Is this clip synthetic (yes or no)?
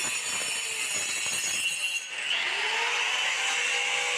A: no